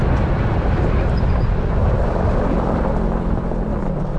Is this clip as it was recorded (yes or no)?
yes